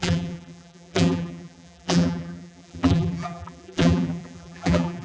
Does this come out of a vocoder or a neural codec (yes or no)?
yes